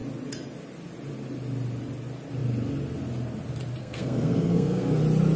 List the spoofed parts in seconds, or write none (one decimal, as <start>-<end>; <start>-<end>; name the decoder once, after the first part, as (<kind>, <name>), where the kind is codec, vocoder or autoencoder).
3.8-5.0 (codec, SNAC)